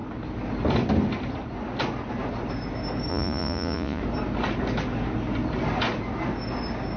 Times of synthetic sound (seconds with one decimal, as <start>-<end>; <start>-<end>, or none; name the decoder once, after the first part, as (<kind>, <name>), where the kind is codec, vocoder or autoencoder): 3.1-4.0 (vocoder, Vocos)